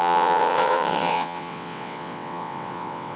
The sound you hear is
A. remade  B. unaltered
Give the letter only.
A